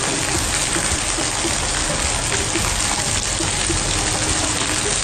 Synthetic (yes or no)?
no